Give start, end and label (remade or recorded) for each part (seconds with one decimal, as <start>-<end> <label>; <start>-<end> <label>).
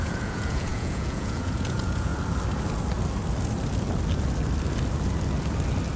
0.0-2.1 remade; 2.1-6.0 recorded